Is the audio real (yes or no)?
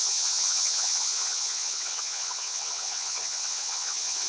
no